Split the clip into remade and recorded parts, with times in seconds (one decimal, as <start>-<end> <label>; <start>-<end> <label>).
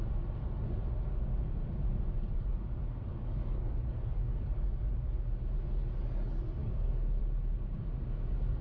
0.0-3.1 recorded; 3.1-4.9 remade; 4.9-6.6 recorded; 6.6-7.2 remade; 7.2-8.6 recorded